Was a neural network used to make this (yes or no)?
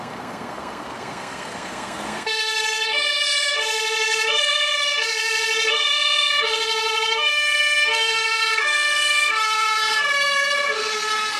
yes